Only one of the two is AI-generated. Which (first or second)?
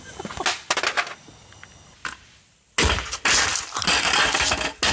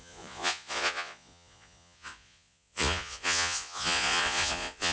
second